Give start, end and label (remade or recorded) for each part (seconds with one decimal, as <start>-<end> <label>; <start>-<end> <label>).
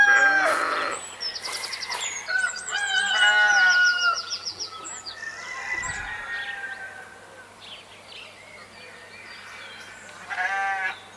0.0-3.9 recorded; 3.9-4.8 remade; 4.8-11.2 recorded